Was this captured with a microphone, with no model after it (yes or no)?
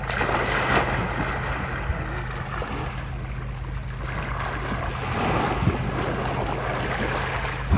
yes